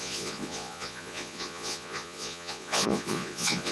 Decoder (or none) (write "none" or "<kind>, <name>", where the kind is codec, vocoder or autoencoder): vocoder, Vocos